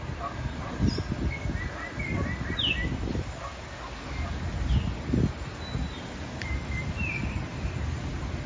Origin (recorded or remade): recorded